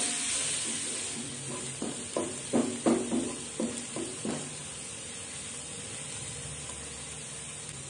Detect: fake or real real